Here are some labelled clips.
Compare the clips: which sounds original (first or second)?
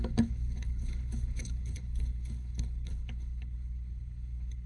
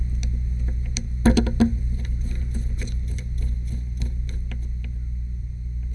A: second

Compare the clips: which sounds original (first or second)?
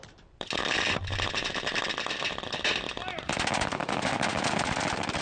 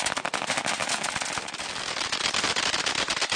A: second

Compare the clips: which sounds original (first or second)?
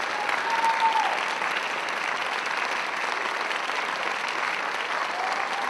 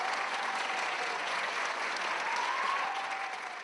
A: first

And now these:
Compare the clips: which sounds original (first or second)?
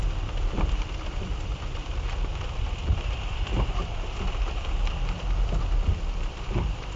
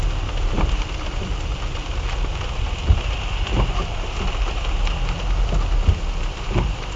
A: second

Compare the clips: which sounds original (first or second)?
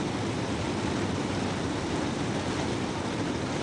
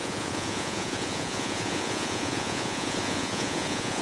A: first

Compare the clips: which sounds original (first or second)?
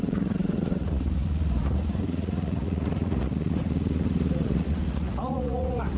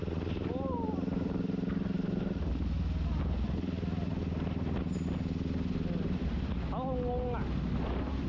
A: second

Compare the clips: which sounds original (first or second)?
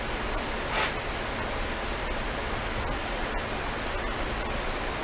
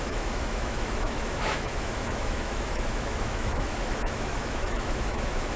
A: first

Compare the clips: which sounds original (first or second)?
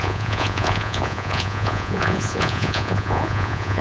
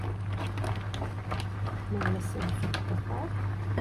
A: second